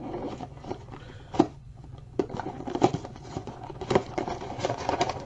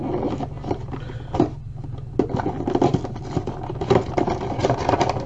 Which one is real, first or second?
second